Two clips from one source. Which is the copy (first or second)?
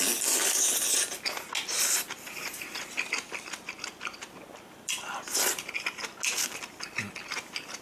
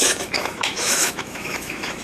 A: second